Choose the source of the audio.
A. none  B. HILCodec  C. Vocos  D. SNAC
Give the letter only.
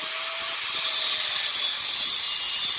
A